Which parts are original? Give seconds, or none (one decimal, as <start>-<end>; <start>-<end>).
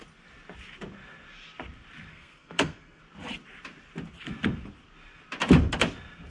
0.0-2.1; 3.0-6.3